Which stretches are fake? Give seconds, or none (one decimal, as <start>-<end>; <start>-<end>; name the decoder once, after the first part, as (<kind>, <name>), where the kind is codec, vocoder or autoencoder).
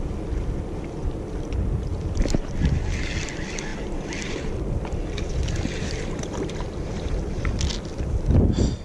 none